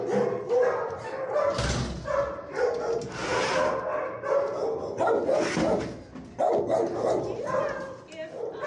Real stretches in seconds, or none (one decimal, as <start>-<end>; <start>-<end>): 0.0-8.7